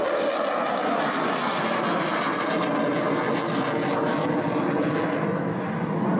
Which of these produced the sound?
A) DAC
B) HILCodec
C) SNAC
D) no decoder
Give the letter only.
D